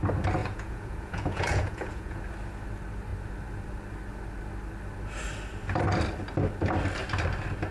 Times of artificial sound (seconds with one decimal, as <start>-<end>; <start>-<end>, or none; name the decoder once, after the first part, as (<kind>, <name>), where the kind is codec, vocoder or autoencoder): 0.4-2.2 (vocoder, Vocos)